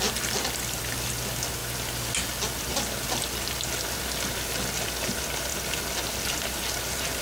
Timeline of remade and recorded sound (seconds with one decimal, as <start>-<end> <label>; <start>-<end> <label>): 0.0-7.2 recorded